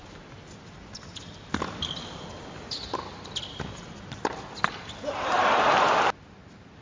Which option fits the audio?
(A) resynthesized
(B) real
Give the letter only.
B